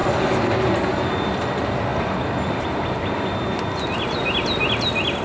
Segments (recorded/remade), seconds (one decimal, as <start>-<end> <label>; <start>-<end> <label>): 0.0-5.2 recorded